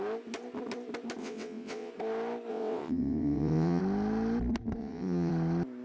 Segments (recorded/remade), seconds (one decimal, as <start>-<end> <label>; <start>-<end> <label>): 0.0-1.2 recorded; 1.2-1.9 remade; 1.9-2.5 recorded; 2.5-3.8 remade; 3.8-4.8 recorded; 4.8-5.3 remade; 5.3-5.8 recorded